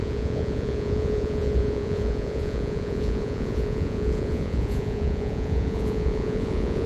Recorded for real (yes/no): no